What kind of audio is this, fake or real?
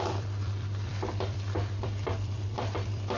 fake